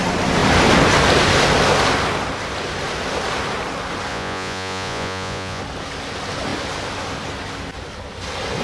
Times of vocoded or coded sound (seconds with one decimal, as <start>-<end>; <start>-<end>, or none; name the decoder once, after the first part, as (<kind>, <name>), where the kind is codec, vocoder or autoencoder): 4.1-5.6 (vocoder, Vocos)